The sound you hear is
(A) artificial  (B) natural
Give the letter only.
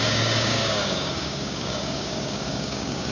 A